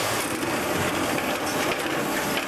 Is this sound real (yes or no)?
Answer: yes